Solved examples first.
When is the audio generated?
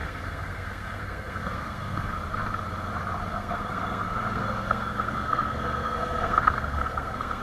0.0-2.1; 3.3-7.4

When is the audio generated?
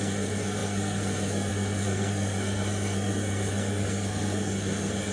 0.0-5.1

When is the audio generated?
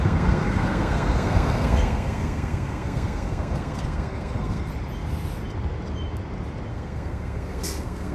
0.0-4.7; 6.7-8.1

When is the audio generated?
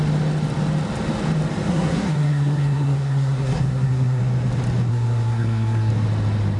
1.7-4.2; 4.9-5.9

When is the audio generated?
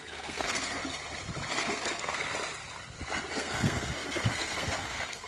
0.0-0.8; 1.5-2.2; 3.3-5.3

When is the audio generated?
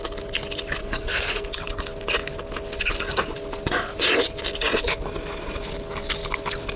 0.8-1.5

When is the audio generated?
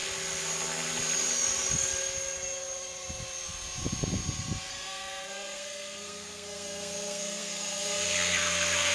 4.7-8.9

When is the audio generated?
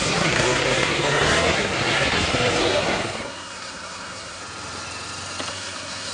0.0-4.4; 5.5-6.1